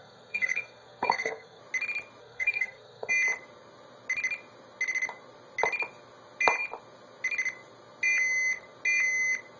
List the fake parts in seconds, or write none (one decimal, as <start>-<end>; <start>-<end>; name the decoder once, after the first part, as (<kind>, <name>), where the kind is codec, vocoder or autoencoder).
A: 0.0-1.6 (codec, SNAC); 2.2-3.1